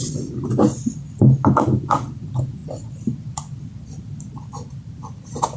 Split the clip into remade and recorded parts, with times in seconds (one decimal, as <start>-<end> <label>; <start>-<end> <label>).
0.0-5.6 remade

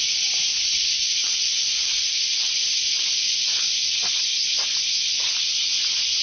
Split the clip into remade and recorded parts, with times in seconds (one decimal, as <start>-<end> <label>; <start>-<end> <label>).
0.0-0.5 recorded; 0.5-4.2 remade; 4.2-6.2 recorded

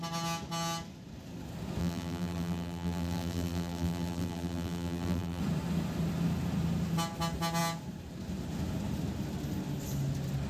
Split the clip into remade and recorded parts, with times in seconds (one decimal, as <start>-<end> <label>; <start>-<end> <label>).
0.0-1.8 recorded; 1.8-5.4 remade; 5.4-10.5 recorded

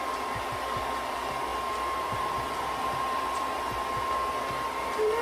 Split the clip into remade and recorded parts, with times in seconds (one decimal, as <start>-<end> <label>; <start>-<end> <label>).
0.0-1.5 recorded; 1.5-3.4 remade; 3.4-5.2 recorded

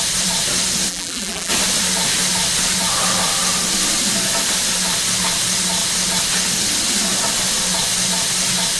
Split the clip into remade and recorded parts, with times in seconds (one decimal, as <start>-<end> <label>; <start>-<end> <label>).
0.0-0.9 recorded; 0.9-1.5 remade; 1.5-8.8 recorded

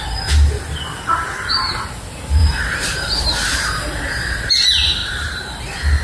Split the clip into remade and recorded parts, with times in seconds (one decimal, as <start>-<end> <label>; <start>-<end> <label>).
0.0-2.4 recorded; 2.4-4.5 remade; 4.5-5.0 recorded; 5.0-5.6 remade; 5.6-6.0 recorded

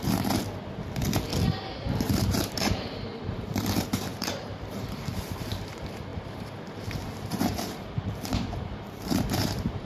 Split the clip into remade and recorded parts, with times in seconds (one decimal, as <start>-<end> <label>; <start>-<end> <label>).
0.0-0.4 remade; 0.4-1.9 recorded; 1.9-9.9 remade